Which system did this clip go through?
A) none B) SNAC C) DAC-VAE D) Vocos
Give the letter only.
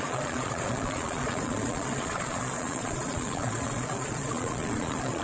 D